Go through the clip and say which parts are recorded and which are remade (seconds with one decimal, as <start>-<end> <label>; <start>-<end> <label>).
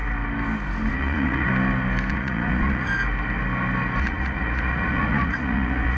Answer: 0.0-0.9 recorded; 0.9-1.5 remade; 1.5-2.1 recorded; 2.1-2.9 remade; 2.9-4.0 recorded; 4.0-6.0 remade